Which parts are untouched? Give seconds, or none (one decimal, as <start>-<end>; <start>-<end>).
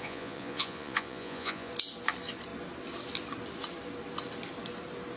1.7-5.2